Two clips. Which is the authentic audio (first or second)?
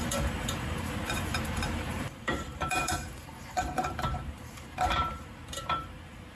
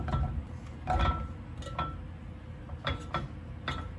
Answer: second